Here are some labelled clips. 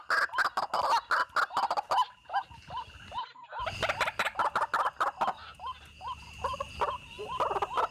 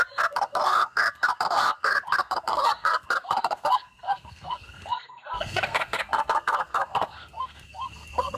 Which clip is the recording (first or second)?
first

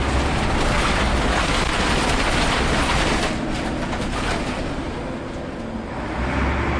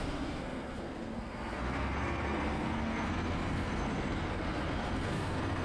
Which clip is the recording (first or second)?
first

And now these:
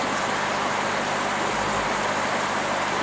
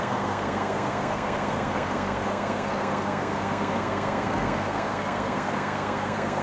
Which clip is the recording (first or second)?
first